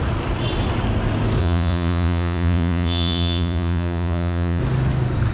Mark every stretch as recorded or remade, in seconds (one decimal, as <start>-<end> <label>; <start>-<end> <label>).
0.0-1.4 recorded; 1.4-4.6 remade; 4.6-5.3 recorded